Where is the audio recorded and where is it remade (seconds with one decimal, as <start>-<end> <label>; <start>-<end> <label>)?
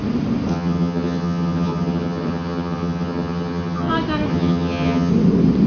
0.0-0.5 recorded; 0.5-3.9 remade; 3.9-4.3 recorded; 4.3-5.1 remade; 5.1-5.7 recorded